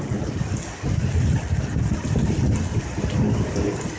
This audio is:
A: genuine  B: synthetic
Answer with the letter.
A